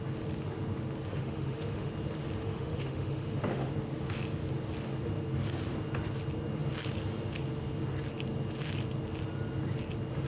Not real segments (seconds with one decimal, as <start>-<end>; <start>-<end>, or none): 1.1-1.9; 2.4-3.7